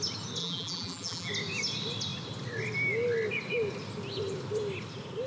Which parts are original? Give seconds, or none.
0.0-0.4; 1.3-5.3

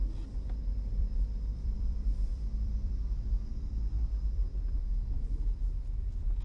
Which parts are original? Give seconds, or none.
0.0-1.0; 2.9-3.5; 4.8-6.4

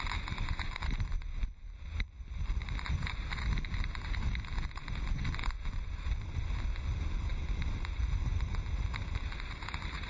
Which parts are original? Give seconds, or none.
0.0-10.1